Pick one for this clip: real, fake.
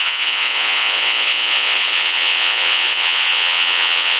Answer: fake